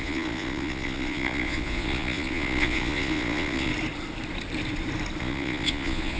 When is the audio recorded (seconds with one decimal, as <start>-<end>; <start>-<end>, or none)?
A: 3.7-5.2